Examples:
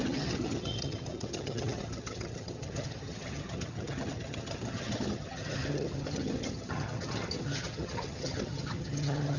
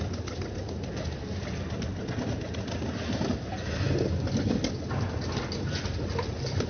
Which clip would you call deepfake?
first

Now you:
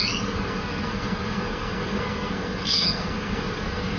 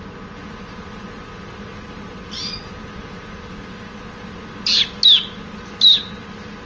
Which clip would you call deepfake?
first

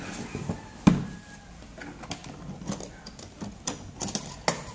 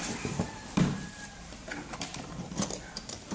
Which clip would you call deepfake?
second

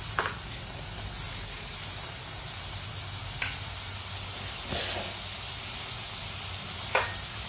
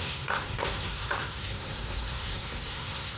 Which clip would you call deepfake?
second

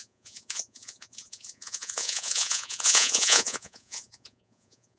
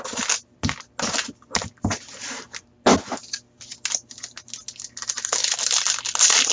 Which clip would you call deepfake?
first